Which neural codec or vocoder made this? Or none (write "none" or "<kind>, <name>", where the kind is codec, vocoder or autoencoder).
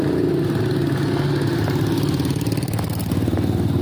none